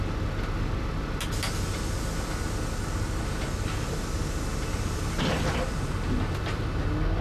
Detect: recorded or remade recorded